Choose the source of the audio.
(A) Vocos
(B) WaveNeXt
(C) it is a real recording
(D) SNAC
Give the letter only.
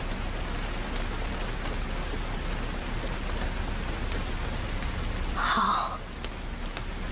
C